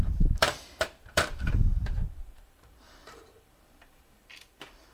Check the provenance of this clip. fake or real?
fake